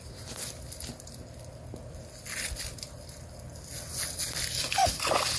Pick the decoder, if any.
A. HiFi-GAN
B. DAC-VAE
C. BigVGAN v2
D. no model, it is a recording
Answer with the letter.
D